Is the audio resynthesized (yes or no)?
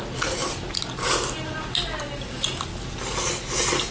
no